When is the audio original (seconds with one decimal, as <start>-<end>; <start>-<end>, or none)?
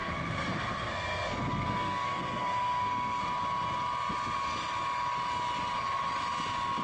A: 3.2-6.8